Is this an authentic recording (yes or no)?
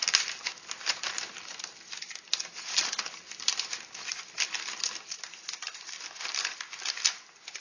yes